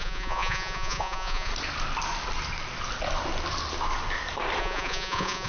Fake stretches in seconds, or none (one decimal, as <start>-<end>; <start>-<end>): 0.0-1.5; 4.6-5.5